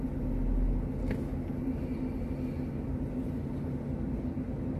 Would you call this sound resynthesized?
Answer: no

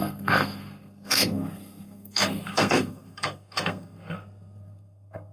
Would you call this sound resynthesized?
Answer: yes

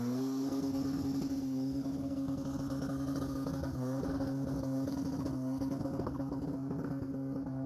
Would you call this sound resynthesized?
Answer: yes